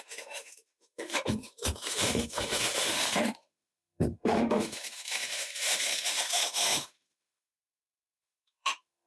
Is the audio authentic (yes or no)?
no